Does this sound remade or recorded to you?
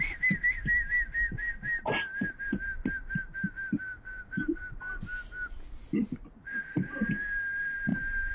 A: recorded